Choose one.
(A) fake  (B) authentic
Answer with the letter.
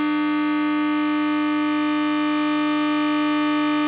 B